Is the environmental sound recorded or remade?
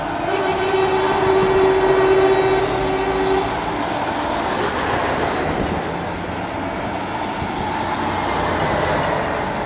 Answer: recorded